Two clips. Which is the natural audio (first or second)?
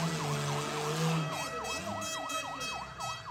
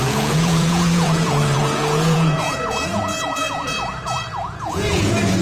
first